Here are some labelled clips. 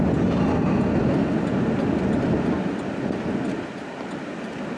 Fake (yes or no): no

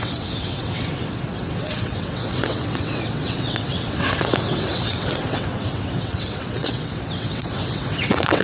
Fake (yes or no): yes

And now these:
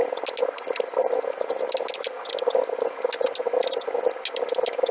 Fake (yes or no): no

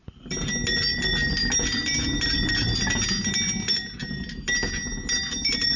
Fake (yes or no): no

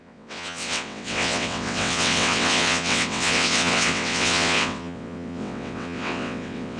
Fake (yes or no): yes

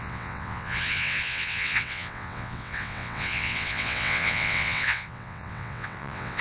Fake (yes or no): yes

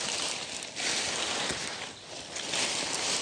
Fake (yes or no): no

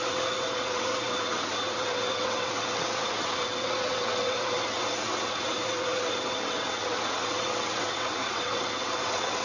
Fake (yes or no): yes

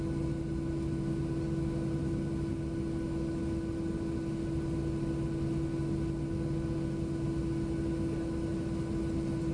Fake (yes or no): no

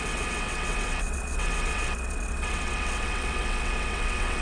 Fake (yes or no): yes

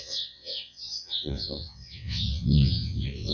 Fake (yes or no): yes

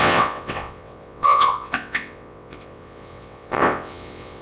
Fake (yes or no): yes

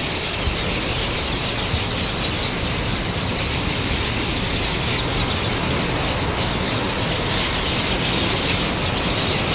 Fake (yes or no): no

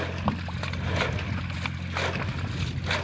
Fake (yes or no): no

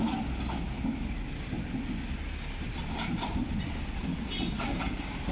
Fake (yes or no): no